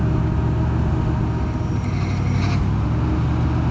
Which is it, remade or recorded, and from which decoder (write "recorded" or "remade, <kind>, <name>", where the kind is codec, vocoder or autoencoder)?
recorded